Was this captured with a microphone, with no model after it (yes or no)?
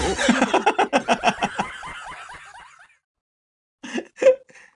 yes